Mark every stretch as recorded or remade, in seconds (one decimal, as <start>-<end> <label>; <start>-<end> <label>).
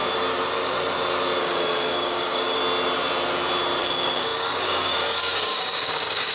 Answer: 0.0-1.4 recorded; 1.4-2.6 remade; 2.6-3.8 recorded; 3.8-6.3 remade